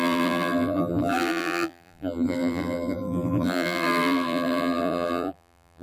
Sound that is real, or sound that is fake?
fake